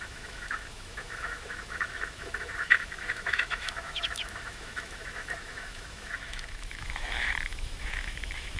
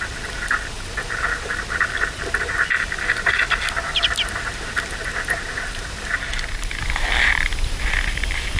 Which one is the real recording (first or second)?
second